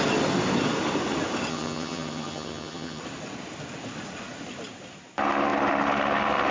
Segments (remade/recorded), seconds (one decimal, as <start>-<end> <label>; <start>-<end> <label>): 0.0-1.5 recorded; 1.5-3.0 remade; 3.0-6.5 recorded